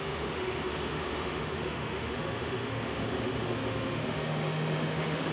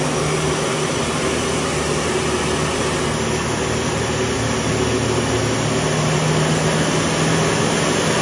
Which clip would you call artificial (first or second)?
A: first